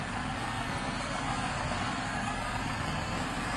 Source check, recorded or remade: remade